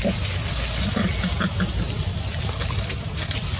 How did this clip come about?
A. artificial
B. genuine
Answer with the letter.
B